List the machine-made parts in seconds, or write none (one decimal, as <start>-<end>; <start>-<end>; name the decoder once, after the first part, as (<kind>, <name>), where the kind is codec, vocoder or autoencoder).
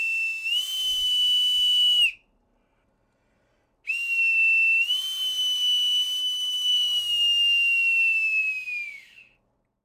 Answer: 6.2-7.4 (autoencoder, DAC-VAE)